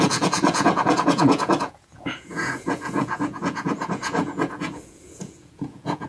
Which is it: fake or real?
fake